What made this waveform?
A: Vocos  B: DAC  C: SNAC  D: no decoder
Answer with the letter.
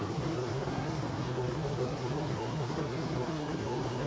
C